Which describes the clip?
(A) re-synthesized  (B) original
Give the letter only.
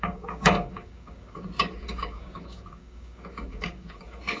A